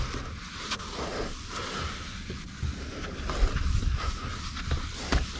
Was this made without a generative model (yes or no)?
yes